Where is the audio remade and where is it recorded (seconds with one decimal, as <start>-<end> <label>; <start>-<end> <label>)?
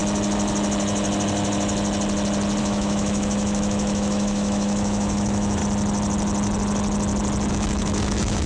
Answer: 0.0-2.6 recorded; 2.6-5.6 remade; 5.6-7.5 recorded; 7.5-8.5 remade